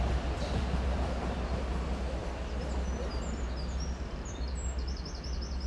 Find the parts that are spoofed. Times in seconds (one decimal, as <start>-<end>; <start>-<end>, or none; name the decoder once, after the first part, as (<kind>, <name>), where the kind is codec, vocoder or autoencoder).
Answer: none